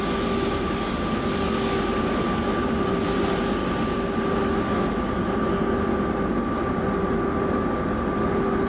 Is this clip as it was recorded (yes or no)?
yes